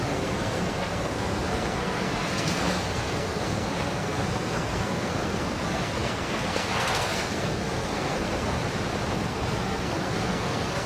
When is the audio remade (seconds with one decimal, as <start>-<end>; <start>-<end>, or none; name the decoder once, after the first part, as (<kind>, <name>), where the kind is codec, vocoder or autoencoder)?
0.0-8.6 (codec, SNAC); 9.1-10.9